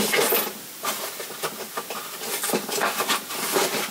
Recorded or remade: recorded